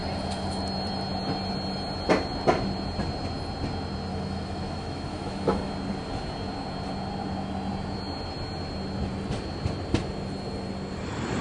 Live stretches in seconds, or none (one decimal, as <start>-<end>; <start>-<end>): 0.0-4.1; 5.7-11.4